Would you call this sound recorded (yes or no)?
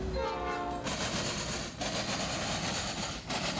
yes